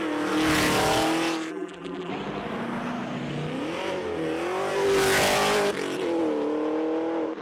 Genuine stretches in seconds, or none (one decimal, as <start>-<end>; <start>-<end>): 0.0-1.5; 2.1-7.4